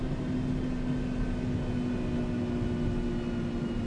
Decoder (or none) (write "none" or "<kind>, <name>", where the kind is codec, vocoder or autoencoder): none